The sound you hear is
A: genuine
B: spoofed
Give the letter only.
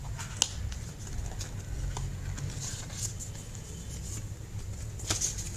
A